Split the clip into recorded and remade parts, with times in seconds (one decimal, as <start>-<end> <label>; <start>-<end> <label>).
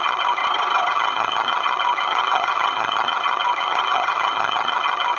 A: 0.0-0.4 remade; 0.4-0.9 recorded; 0.9-5.2 remade